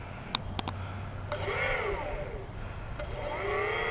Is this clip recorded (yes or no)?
yes